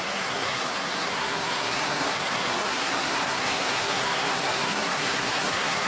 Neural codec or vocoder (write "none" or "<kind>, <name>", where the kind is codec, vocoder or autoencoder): codec, SNAC